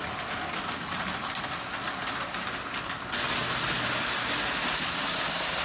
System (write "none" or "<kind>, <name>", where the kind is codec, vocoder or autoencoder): none